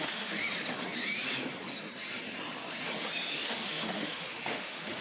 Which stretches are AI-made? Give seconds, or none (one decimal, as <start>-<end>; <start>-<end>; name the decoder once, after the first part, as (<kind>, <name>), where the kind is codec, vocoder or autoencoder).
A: 0.0-0.4 (autoencoder, DAC-VAE); 3.3-5.0